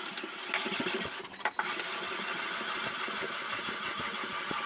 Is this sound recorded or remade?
recorded